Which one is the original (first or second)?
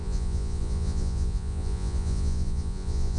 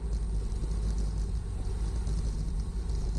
second